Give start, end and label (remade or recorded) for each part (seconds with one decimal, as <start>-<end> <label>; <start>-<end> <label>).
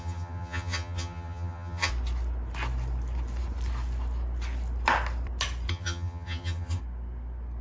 0.0-1.9 remade; 1.9-5.7 recorded; 5.7-6.8 remade; 6.8-7.6 recorded